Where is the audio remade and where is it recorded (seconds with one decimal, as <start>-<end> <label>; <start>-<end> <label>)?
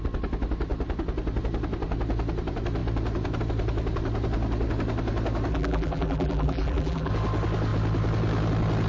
0.0-5.5 recorded; 5.5-7.1 remade; 7.1-8.9 recorded